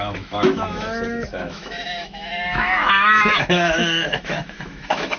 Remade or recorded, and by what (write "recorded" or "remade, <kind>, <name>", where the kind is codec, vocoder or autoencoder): remade, autoencoder, DAC-VAE